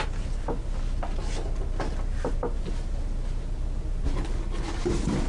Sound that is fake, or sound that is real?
real